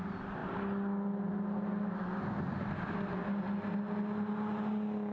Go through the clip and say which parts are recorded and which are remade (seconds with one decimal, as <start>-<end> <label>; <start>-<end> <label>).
0.0-5.1 recorded